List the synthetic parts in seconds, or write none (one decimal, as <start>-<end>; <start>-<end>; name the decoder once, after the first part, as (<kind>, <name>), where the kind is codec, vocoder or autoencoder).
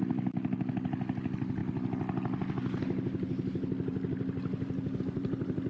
none